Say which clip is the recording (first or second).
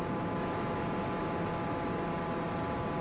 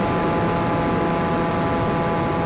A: second